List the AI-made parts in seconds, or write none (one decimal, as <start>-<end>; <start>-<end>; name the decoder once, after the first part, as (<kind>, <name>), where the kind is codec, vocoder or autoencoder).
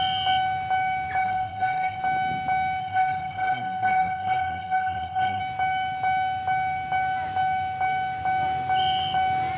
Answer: 1.2-2.0 (codec, SNAC); 2.8-5.4